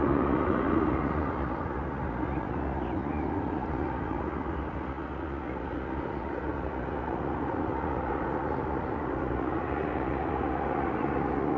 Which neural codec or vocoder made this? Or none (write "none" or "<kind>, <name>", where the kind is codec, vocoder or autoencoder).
vocoder, Vocos